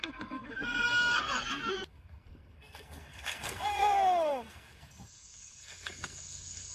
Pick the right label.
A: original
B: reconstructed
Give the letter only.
B